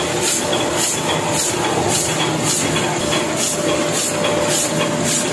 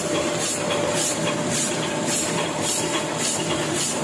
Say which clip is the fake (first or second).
second